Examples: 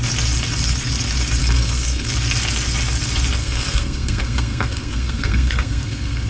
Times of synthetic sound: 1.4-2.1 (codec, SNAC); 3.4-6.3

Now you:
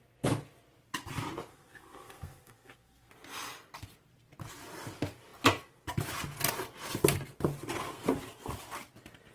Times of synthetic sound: 1.5-3.1 (codec, SNAC)

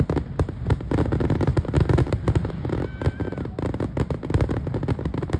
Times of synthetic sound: none

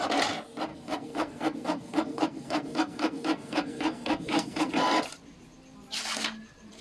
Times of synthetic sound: 0.7-4.7 (codec, SNAC)

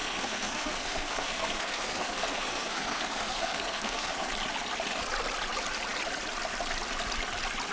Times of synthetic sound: 0.0-4.3 (codec, SNAC)